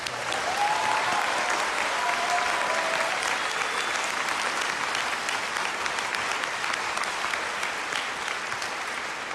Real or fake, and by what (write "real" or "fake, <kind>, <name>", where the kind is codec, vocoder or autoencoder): real